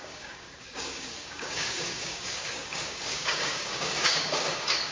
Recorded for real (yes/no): no